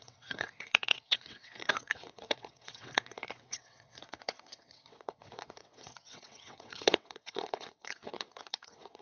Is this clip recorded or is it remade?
remade